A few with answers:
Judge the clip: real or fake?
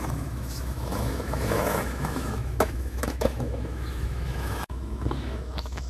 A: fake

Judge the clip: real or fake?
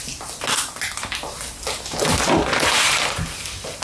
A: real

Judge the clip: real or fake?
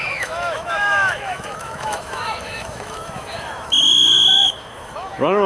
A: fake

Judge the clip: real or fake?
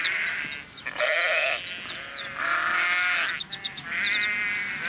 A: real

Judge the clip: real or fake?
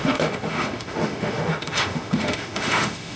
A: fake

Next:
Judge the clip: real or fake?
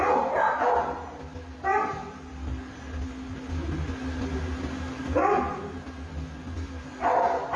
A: real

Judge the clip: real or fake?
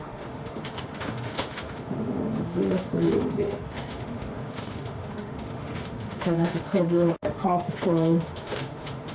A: fake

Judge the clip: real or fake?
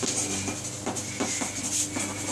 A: real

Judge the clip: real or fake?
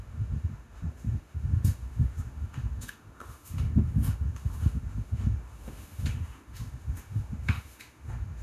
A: fake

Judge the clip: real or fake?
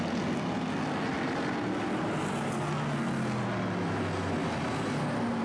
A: real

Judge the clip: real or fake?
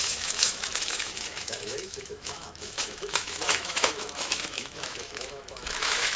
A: fake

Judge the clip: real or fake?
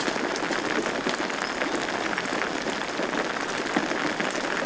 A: real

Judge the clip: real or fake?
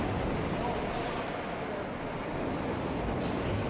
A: real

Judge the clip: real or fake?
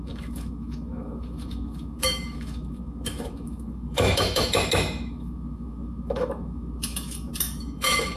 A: fake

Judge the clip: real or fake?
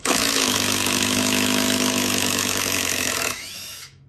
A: fake